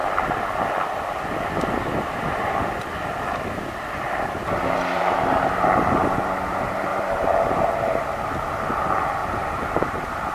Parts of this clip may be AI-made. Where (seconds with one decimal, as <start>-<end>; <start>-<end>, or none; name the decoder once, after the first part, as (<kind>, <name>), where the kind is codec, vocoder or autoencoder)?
6.9-7.7 (vocoder, BigVGAN v2); 9.2-10.3